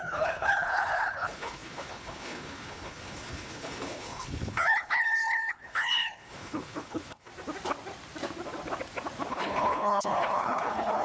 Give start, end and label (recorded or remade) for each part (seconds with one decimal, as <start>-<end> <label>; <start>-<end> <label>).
0.0-7.3 remade; 7.3-9.3 recorded; 9.3-11.0 remade